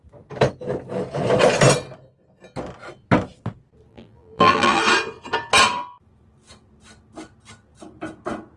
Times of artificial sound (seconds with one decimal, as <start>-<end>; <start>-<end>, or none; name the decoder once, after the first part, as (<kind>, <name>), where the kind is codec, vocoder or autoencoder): 3.9-4.8 (vocoder, BigVGAN v2)